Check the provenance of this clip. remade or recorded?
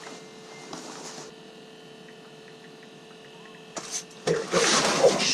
recorded